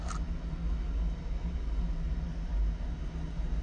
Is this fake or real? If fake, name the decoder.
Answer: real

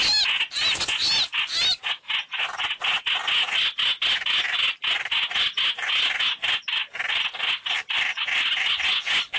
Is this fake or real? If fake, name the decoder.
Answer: real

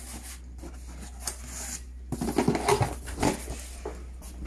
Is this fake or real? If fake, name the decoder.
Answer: real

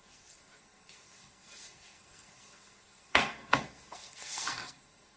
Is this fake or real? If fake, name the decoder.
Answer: fake, codec, SNAC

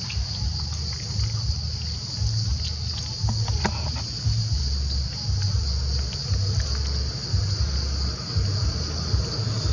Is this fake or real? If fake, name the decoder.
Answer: real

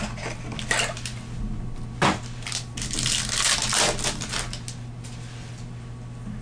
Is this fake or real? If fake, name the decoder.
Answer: real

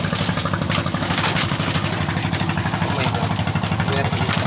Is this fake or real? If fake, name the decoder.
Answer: real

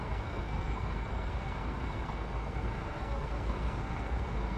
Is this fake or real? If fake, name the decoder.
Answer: fake, codec, SNAC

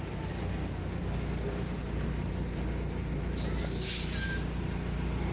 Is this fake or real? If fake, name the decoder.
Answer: real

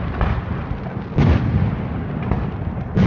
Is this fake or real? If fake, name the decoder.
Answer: real